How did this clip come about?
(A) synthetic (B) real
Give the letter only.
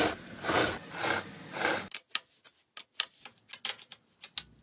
B